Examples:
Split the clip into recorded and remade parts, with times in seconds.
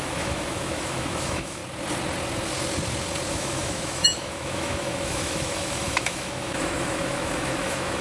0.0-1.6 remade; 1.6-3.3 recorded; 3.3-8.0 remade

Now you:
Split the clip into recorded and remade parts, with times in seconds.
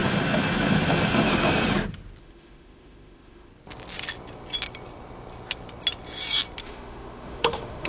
0.0-2.2 recorded; 2.2-3.5 remade; 3.5-6.6 recorded; 6.6-7.9 remade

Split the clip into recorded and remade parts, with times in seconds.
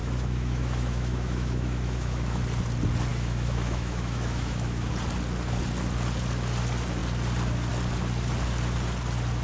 0.0-2.4 remade; 2.4-3.1 recorded; 3.1-4.9 remade; 4.9-9.4 recorded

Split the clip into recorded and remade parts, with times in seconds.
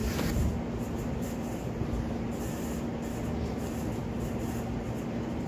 0.0-5.5 recorded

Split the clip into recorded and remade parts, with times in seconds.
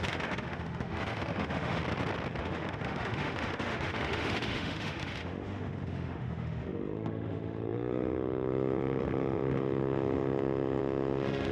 0.0-1.8 remade; 1.8-2.4 recorded; 2.4-11.5 remade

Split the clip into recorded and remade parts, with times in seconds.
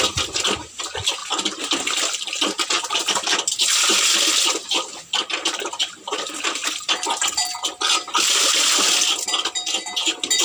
0.0-10.4 recorded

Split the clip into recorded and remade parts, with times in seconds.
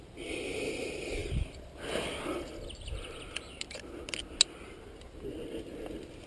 0.0-6.3 recorded